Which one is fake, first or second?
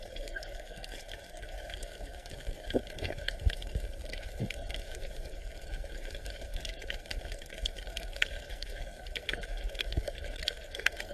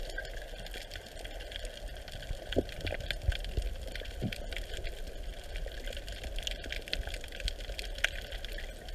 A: first